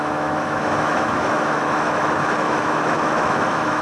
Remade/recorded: remade